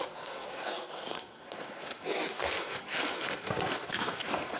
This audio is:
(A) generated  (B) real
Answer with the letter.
A